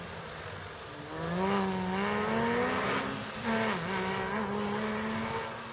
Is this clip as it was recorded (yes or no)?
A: yes